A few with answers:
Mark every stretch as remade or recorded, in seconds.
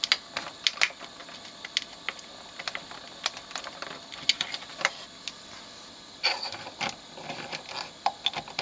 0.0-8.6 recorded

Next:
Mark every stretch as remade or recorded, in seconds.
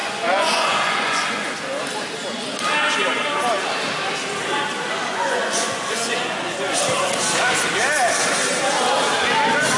0.0-1.5 remade; 1.5-5.1 recorded; 5.1-6.8 remade; 6.8-9.8 recorded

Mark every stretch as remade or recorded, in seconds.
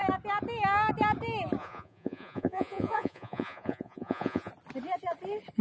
0.0-1.6 recorded; 1.6-4.5 remade; 4.5-5.6 recorded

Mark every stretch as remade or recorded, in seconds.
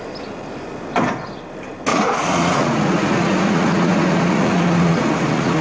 0.0-1.9 recorded; 1.9-5.6 remade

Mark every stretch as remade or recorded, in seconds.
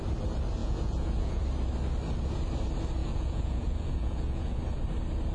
0.0-0.6 recorded; 0.6-1.4 remade; 1.4-3.0 recorded; 3.0-4.6 remade; 4.6-5.3 recorded